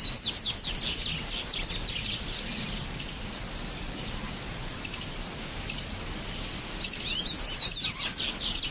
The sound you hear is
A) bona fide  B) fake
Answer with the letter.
A